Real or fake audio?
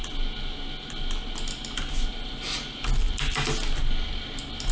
real